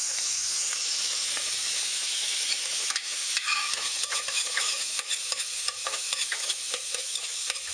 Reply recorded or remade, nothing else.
remade